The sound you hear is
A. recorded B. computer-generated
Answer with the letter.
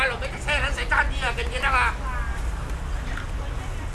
A